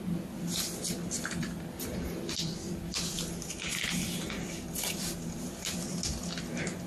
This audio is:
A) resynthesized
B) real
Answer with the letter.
A